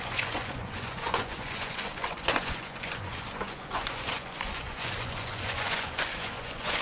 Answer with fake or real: fake